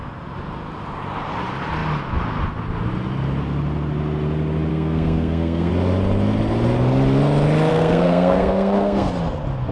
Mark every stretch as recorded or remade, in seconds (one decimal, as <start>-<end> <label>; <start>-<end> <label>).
0.0-4.7 recorded; 4.7-5.7 remade; 5.7-7.7 recorded; 7.7-9.1 remade; 9.1-9.7 recorded